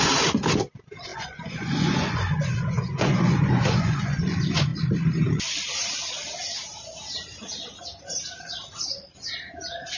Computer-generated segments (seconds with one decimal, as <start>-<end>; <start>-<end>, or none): 1.1-4.2